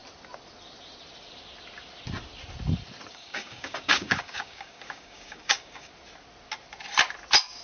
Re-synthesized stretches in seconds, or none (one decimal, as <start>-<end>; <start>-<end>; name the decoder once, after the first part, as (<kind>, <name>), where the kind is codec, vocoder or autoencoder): 3.1-5.9 (codec, DAC)